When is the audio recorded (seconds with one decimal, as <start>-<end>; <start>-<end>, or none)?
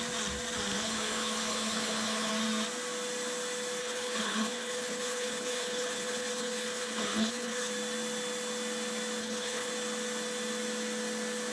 0.0-0.7; 2.3-3.8; 7.7-9.2; 9.7-11.5